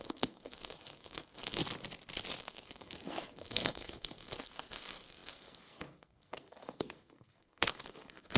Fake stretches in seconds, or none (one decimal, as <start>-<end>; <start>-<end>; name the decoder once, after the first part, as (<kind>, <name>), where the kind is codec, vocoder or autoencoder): 0.0-1.6 (codec, SNAC); 2.4-8.4